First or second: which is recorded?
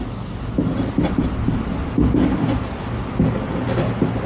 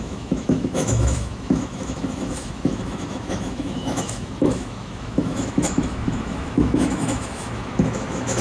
first